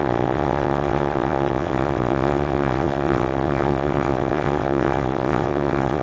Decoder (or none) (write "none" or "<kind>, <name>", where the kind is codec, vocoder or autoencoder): vocoder, WaveNeXt